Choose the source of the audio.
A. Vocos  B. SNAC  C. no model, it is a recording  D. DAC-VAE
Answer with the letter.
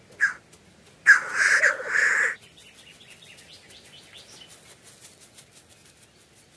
C